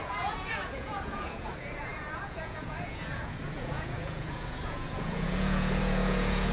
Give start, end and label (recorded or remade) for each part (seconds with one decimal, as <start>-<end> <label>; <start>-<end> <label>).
0.0-6.5 remade